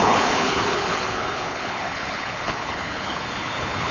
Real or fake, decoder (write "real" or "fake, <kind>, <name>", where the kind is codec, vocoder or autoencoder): fake, codec, HILCodec